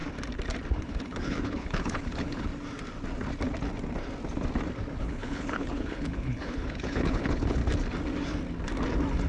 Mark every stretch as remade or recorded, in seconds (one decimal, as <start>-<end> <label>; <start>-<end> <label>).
0.0-0.8 recorded; 0.8-2.5 remade; 2.5-5.0 recorded; 5.0-7.6 remade; 7.6-9.3 recorded